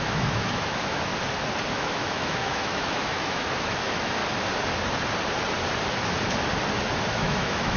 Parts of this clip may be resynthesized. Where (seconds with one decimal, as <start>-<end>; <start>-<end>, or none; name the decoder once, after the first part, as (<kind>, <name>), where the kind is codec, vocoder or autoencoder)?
0.0-1.1 (autoencoder, DAC-VAE); 1.7-4.2; 7.1-7.8